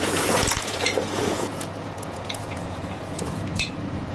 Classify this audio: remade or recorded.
remade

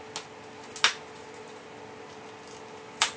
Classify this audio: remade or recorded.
recorded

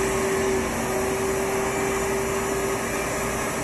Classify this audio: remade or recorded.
recorded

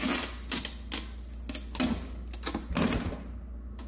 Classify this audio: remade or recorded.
recorded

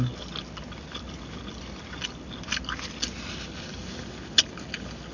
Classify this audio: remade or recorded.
recorded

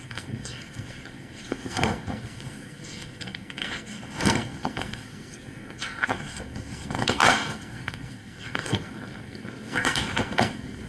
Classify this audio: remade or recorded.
remade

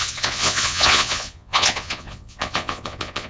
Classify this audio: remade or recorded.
remade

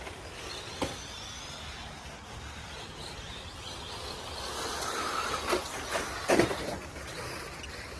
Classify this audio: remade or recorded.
recorded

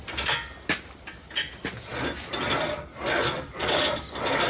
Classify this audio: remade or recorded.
recorded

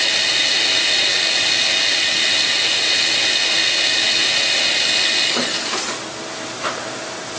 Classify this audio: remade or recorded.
recorded